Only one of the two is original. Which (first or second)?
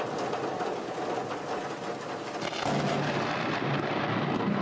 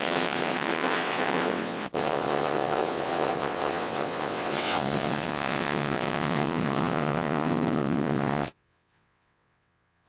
first